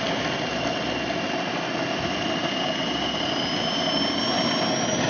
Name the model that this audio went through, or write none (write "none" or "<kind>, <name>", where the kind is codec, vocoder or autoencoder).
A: none